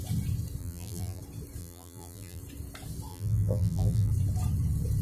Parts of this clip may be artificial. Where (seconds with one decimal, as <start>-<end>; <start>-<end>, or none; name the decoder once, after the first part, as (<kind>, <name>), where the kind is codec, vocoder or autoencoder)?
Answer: 0.6-1.2 (vocoder, BigVGAN v2); 1.6-2.4; 3.1-4.1